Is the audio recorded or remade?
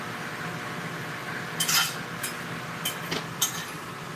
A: recorded